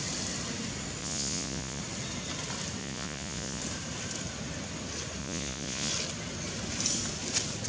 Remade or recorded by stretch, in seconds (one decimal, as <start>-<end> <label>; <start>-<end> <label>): 0.0-1.0 recorded; 1.0-1.8 remade; 1.8-2.8 recorded; 2.8-3.6 remade; 3.6-5.2 recorded; 5.2-5.9 remade; 5.9-7.7 recorded